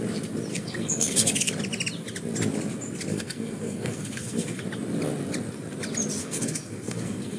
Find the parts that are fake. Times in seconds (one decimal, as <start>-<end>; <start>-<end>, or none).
0.5-1.5; 3.1-4.6; 6.2-7.4